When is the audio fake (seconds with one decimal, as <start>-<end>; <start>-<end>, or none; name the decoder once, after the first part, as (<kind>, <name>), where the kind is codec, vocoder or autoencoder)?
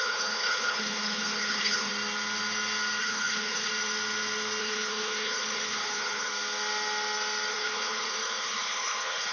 0.0-1.9 (codec, HILCodec); 3.0-3.7; 4.6-6.3; 7.5-9.3